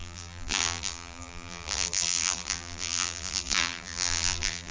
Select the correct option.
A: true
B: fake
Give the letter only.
B